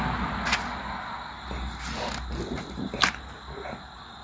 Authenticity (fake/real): real